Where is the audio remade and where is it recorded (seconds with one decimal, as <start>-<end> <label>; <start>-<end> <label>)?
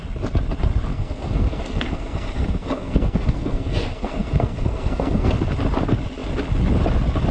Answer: 0.0-0.9 recorded; 0.9-5.3 remade; 5.3-7.3 recorded